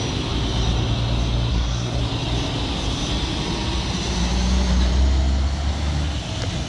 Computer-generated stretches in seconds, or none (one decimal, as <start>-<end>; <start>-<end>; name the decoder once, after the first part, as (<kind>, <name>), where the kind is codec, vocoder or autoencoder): 1.5-2.0 (codec, SNAC)